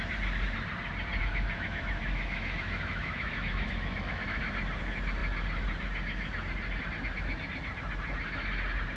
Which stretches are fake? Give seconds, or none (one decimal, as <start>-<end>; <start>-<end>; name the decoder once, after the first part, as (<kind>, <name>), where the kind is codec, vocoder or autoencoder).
1.2-4.4 (autoencoder, DAC-VAE)